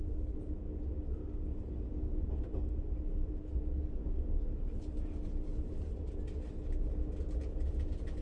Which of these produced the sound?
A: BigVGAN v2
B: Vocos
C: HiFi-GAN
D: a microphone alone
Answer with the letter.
D